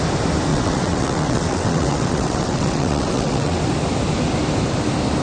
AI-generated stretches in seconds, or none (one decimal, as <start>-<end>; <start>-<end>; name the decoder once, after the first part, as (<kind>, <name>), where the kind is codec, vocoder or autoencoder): 0.5-3.6 (vocoder, WaveNeXt)